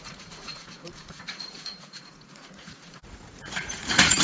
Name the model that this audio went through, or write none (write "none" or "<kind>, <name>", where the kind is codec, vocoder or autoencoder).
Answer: vocoder, Vocos